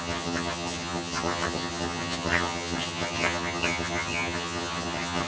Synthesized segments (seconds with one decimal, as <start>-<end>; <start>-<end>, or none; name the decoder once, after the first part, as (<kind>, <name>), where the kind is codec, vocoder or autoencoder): 0.0-5.3 (vocoder, HiFi-GAN)